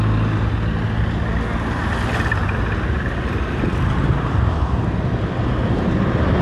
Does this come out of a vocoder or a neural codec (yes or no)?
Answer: no